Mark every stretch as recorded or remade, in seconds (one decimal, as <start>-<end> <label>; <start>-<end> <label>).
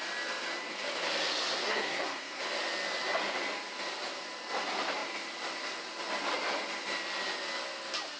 0.0-1.6 recorded; 1.6-2.4 remade; 2.4-8.2 recorded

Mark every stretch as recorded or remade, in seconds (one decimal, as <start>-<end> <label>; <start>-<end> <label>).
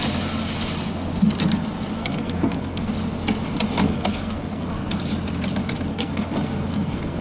0.0-2.0 recorded; 2.0-2.9 remade; 2.9-3.8 recorded; 3.8-4.9 remade; 4.9-5.9 recorded; 5.9-7.2 remade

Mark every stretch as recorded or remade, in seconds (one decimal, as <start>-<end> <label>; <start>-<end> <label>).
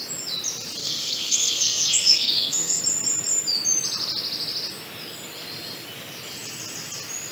0.0-0.8 recorded; 0.8-2.8 remade; 2.8-7.3 recorded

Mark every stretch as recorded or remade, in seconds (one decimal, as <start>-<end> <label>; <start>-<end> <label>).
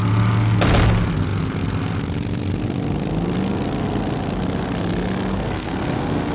0.0-5.3 recorded; 5.3-6.3 remade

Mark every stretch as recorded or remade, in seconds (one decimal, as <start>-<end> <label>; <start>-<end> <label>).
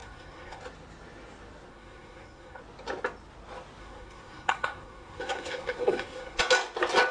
0.0-0.6 remade; 0.6-1.7 recorded; 1.7-2.6 remade; 2.6-3.8 recorded; 3.8-6.4 remade; 6.4-7.1 recorded